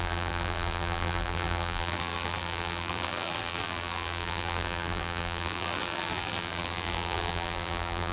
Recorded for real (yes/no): no